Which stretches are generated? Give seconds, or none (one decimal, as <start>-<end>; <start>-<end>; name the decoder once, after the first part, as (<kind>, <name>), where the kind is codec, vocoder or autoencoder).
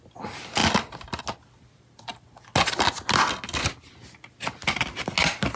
none